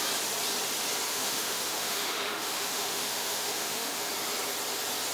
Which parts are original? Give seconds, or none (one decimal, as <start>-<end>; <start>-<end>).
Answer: 0.0-1.1; 4.1-5.1